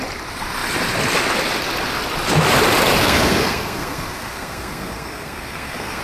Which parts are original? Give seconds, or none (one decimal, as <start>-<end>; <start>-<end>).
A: 0.0-3.0